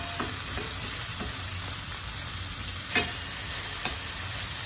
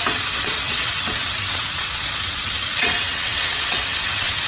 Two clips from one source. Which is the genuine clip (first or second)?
first